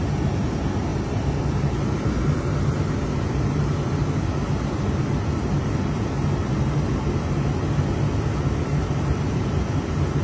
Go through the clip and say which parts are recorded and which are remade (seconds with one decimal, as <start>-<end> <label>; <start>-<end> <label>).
0.0-10.2 recorded